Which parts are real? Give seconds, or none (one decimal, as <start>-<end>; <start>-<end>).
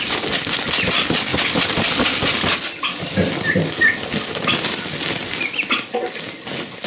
0.0-6.9